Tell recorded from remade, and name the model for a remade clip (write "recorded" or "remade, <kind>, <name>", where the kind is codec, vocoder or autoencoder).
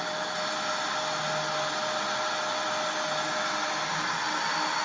recorded